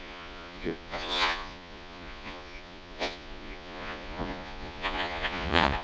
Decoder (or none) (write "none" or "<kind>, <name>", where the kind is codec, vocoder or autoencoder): vocoder, Vocos